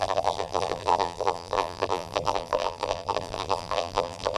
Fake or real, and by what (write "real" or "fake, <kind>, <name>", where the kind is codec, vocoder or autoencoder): fake, vocoder, BigVGAN v2